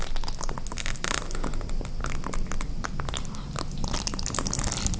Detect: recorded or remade recorded